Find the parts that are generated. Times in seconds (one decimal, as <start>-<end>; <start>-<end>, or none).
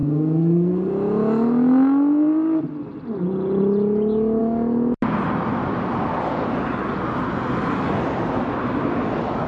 0.0-0.9